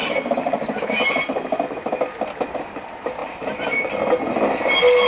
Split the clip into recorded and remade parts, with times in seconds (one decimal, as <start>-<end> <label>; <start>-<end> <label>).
0.0-1.1 remade; 1.1-3.2 recorded; 3.2-3.9 remade; 3.9-5.1 recorded